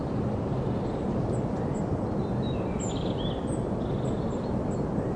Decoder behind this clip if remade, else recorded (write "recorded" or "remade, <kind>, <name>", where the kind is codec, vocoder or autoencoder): recorded